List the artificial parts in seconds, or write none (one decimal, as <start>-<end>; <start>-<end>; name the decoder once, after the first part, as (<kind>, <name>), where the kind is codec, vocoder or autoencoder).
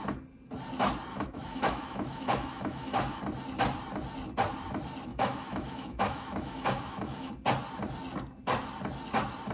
1.1-3.2 (autoencoder, DAC-VAE); 5.1-7.3